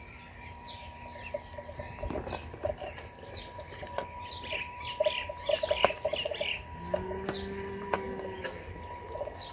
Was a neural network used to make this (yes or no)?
no